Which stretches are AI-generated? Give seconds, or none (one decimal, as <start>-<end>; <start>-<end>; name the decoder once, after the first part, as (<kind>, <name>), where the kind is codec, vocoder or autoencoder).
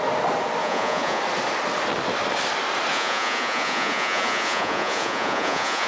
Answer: 0.6-1.2 (vocoder, Vocos); 2.9-5.9